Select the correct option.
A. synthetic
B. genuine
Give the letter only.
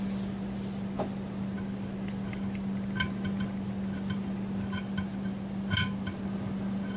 B